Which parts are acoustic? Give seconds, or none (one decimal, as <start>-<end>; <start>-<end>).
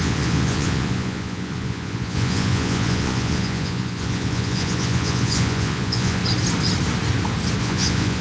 6.2-7.6